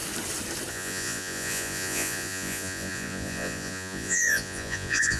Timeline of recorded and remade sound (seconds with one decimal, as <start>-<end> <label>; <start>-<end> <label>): 0.0-0.7 recorded; 0.7-5.2 remade